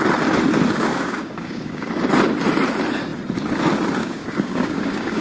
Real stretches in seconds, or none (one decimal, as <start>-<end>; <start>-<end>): 0.0-0.9; 1.9-4.0